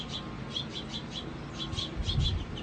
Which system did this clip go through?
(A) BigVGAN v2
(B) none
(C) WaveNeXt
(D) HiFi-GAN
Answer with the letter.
B